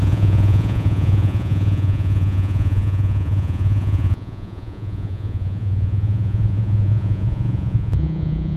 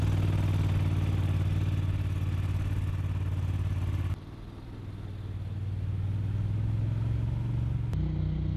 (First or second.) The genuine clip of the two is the second